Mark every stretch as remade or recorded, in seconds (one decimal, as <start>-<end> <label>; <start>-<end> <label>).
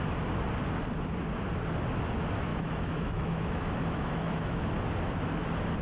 0.0-2.5 recorded; 2.5-4.6 remade; 4.6-5.8 recorded